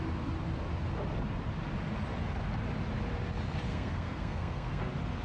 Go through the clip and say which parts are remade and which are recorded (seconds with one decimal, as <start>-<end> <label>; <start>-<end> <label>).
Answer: 0.0-3.7 recorded; 3.7-4.8 remade; 4.8-5.2 recorded